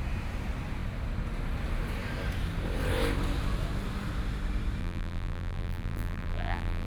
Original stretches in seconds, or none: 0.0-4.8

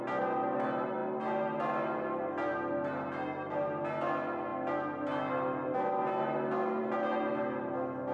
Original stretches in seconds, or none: 0.0-8.1

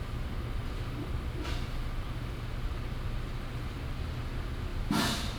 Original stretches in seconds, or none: 0.0-0.6; 1.1-4.7

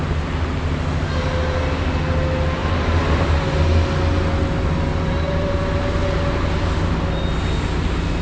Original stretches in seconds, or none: 0.0-2.6; 3.6-4.9; 5.5-8.2

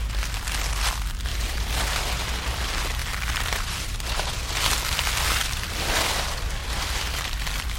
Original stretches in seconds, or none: 0.0-1.3; 2.1-3.0; 4.3-5.4; 6.0-6.6

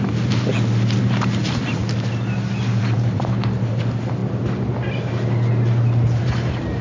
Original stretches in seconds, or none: 0.5-1.0; 1.8-2.8; 4.2-6.2